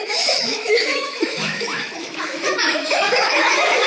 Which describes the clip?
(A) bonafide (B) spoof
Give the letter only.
B